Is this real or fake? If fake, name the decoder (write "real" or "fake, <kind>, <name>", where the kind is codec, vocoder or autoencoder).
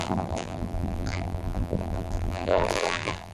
fake, vocoder, BigVGAN v2